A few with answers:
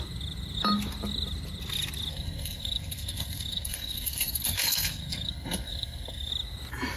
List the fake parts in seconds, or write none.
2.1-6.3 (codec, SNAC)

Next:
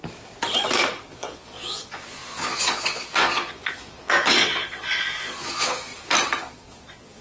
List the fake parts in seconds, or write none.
1.1-5.9 (vocoder, Vocos); 6.4-7.2